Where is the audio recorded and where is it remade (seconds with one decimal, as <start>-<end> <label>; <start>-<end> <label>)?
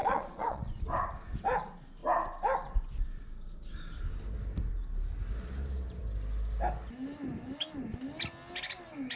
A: 0.0-0.8 remade; 0.8-9.2 recorded